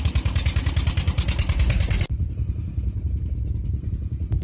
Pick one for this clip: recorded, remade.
recorded